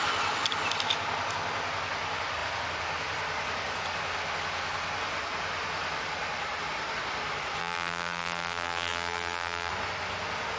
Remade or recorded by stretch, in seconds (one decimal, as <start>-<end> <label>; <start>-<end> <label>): 0.0-7.6 recorded; 7.6-9.7 remade; 9.7-10.6 recorded